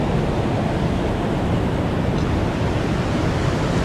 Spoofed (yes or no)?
no